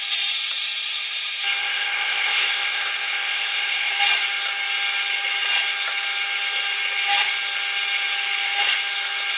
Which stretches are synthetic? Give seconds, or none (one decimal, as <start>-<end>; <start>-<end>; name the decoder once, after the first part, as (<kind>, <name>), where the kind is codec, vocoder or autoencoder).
1.6-3.9 (codec, ZipCodec)